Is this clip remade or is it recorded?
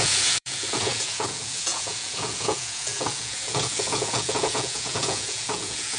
remade